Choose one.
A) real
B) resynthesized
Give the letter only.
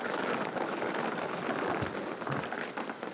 A